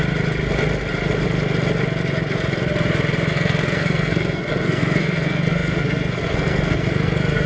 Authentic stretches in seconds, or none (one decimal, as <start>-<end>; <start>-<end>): 0.0-3.3